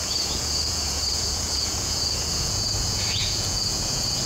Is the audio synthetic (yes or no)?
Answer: yes